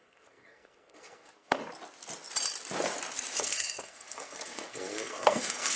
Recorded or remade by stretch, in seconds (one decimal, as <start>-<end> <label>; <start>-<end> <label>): 0.0-1.6 remade; 1.6-3.4 recorded; 3.4-5.8 remade